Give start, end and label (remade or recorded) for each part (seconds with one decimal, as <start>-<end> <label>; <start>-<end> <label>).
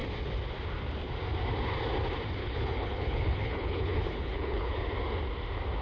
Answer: 0.0-2.4 recorded; 2.4-4.7 remade; 4.7-5.8 recorded